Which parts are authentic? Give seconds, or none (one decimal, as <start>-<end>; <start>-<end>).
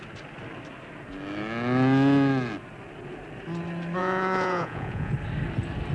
0.0-4.0; 5.1-5.9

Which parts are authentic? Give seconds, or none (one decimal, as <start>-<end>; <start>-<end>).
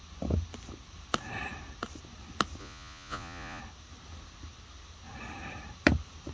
0.0-2.6; 3.6-6.3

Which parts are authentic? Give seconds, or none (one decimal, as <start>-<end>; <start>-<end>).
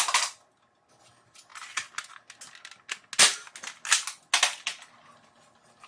0.0-5.9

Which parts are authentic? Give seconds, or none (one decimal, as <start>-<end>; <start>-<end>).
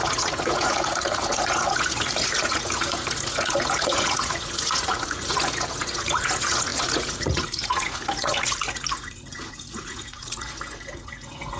none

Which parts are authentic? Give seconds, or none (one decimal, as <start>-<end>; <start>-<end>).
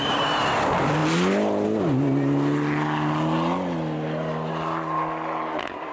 0.0-5.9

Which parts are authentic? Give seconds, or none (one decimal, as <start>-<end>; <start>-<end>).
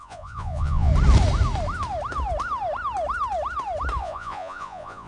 0.9-4.0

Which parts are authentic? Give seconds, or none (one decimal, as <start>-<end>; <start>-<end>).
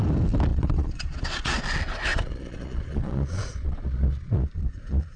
0.0-0.5; 1.6-2.1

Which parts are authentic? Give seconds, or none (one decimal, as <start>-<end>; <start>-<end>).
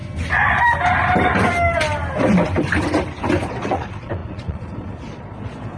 0.0-3.5